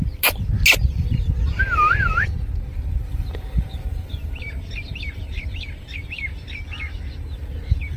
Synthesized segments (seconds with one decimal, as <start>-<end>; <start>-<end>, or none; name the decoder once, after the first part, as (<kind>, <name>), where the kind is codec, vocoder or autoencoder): 3.0-6.3 (vocoder, BigVGAN v2)